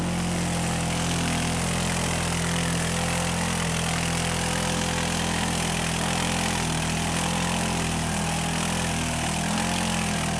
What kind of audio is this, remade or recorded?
recorded